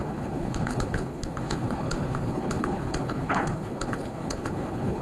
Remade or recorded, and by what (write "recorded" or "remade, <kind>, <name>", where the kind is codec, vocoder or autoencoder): remade, codec, HILCodec